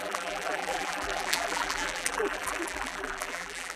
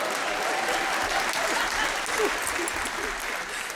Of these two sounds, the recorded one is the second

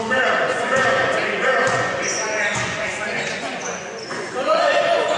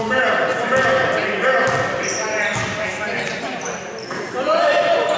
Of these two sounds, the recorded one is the second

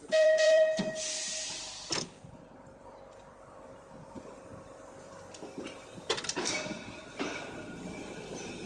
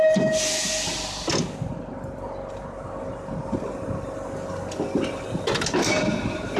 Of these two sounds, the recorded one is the second